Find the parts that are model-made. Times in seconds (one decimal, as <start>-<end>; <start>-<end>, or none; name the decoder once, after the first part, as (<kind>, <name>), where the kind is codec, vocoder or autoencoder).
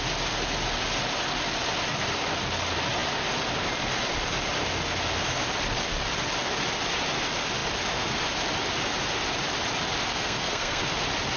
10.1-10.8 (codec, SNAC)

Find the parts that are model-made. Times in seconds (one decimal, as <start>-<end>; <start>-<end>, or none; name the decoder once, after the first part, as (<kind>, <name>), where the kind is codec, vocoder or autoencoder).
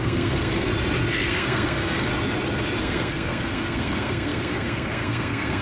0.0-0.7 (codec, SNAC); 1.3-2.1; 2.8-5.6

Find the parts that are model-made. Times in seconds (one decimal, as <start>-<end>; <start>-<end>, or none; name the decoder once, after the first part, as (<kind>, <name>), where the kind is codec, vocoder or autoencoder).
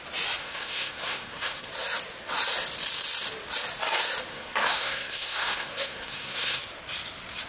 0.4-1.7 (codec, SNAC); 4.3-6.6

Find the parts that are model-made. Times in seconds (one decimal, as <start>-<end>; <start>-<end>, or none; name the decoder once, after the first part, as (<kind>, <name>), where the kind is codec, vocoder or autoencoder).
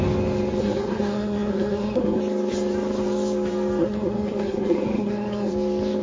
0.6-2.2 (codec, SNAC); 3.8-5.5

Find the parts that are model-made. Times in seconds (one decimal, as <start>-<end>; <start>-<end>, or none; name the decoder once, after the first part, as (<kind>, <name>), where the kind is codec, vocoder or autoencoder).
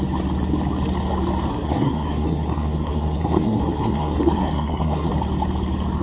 1.5-5.1 (codec, SNAC)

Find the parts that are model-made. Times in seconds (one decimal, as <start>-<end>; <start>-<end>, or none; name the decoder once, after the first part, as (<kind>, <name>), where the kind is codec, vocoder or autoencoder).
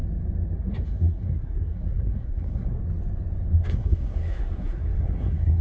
0.6-2.8 (codec, SNAC); 3.6-5.6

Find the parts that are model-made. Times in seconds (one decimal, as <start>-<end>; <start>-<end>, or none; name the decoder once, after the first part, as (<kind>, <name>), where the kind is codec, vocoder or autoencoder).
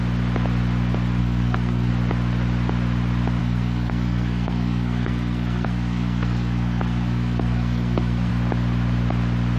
1.2-1.9 (codec, SNAC); 3.4-8.3